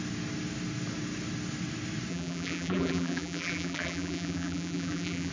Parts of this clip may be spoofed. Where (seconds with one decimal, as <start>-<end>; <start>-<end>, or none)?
2.1-5.3